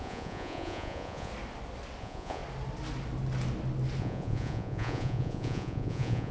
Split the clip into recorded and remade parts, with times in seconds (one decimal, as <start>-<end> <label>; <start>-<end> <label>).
0.0-1.3 remade; 1.3-2.0 recorded; 2.0-2.4 remade; 2.4-4.0 recorded; 4.0-6.3 remade